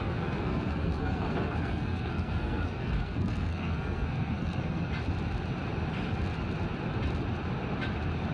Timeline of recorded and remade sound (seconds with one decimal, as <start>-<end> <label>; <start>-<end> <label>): 0.0-4.9 remade; 4.9-8.3 recorded